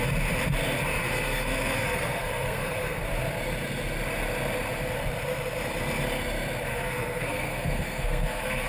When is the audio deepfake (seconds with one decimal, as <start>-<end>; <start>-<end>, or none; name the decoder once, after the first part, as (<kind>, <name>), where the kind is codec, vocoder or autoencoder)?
1.0-3.0 (codec, SNAC); 6.7-8.7